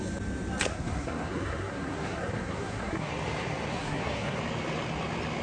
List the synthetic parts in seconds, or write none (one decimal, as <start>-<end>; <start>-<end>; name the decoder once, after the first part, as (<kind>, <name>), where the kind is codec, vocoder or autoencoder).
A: 0.7-3.1 (codec, SNAC); 3.7-4.4